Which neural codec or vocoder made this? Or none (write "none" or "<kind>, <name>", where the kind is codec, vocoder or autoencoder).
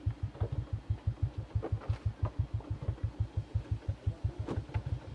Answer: none